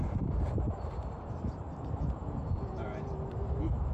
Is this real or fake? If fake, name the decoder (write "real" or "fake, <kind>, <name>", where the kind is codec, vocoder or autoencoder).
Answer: fake, vocoder, BigVGAN v2